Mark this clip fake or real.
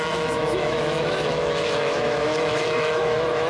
fake